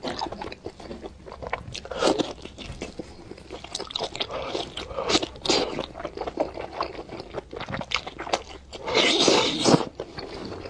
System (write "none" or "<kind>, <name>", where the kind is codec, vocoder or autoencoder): none